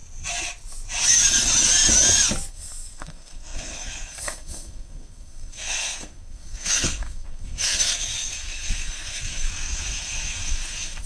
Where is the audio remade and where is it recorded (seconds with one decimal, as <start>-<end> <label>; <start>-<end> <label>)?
0.0-2.5 recorded; 2.5-11.1 remade